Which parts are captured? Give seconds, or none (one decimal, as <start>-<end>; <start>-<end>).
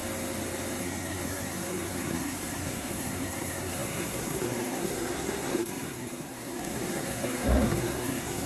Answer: 0.0-0.8